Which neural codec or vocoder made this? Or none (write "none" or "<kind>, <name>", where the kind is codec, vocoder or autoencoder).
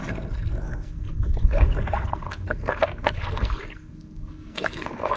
codec, SNAC